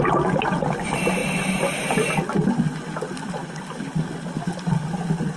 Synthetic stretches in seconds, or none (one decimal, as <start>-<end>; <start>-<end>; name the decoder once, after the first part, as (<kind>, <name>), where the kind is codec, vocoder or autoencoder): 3.4-4.9 (vocoder, BigVGAN v2)